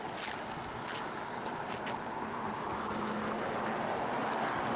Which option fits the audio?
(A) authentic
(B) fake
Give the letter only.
A